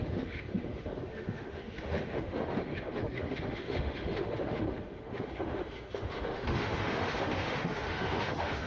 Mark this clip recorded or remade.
remade